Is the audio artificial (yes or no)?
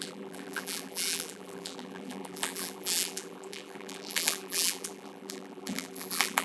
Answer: yes